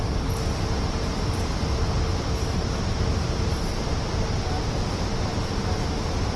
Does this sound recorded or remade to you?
recorded